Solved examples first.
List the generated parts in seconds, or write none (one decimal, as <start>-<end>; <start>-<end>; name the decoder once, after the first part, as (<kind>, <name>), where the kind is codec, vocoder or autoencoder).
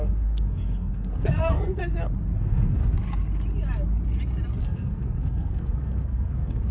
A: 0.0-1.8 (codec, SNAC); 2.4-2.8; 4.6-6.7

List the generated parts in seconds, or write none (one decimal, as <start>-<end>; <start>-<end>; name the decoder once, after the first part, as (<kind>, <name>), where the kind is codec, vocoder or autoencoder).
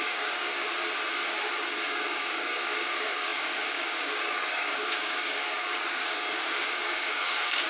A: 0.0-0.7 (codec, DAC); 1.8-7.7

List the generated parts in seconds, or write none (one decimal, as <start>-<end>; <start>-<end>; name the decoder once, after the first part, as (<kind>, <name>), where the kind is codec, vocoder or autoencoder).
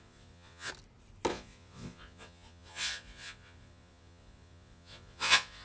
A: 0.0-0.7 (vocoder, Vocos); 1.3-5.6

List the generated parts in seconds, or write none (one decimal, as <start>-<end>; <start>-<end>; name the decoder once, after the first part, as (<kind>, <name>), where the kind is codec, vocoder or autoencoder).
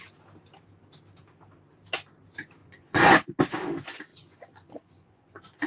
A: 2.6-3.4 (vocoder, Vocos); 4.1-5.7